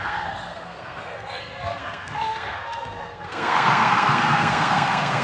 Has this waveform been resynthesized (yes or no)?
yes